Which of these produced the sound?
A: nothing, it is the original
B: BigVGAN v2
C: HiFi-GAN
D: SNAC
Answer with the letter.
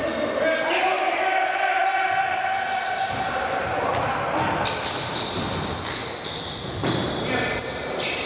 A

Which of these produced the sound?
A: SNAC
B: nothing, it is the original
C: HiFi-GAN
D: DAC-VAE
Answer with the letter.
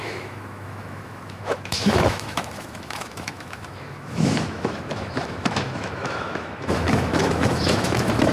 D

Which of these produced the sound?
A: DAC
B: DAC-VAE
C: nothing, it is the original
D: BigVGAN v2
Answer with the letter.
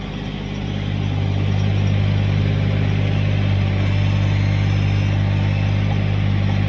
C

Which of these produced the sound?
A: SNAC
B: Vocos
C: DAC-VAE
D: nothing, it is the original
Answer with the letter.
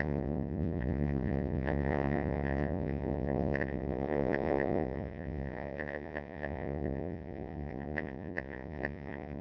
B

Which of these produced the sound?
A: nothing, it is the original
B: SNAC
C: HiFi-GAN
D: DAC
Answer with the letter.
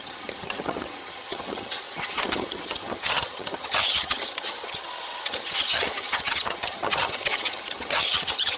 C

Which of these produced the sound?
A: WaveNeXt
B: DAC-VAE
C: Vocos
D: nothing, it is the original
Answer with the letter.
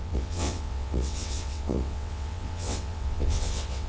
A